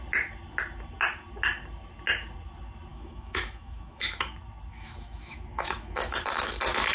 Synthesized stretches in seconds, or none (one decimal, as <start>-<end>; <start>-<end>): 2.9-4.3; 4.7-6.5